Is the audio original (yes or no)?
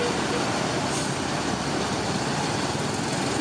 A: yes